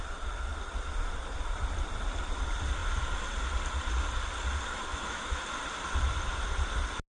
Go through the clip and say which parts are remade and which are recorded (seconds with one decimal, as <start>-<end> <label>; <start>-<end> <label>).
0.0-4.9 recorded; 4.9-5.4 remade; 5.4-7.1 recorded